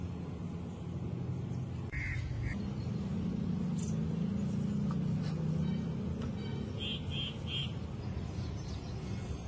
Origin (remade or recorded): recorded